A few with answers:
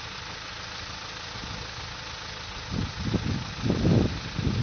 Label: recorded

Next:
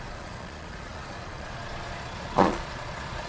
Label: remade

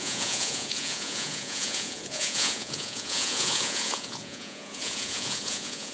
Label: remade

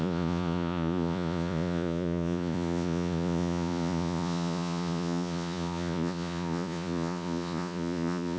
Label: remade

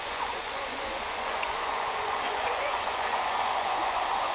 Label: remade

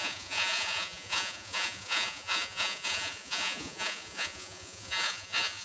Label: remade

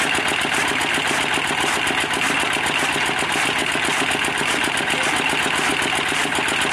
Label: recorded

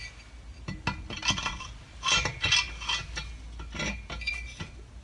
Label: recorded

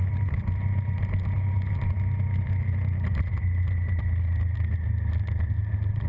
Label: recorded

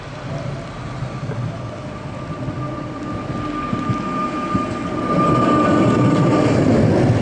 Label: recorded